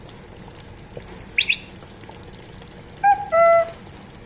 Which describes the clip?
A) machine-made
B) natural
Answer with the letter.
B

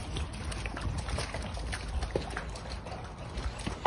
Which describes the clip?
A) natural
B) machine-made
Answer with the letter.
A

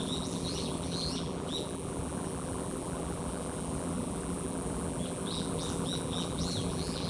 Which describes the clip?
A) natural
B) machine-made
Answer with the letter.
B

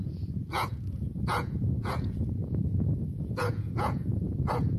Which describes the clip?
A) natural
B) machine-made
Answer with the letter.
B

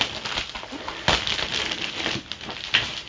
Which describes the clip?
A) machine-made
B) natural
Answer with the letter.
B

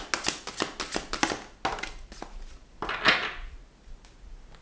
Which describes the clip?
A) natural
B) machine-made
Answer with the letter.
A